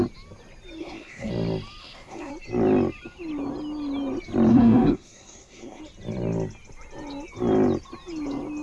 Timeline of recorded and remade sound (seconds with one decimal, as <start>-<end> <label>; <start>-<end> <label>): 0.0-0.8 recorded; 0.8-1.3 remade; 1.3-1.8 recorded; 1.8-2.3 remade; 2.3-4.5 recorded; 4.5-5.8 remade; 5.8-8.6 recorded